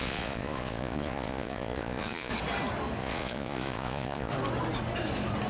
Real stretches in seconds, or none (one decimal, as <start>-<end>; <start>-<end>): 2.3-3.0; 4.3-5.5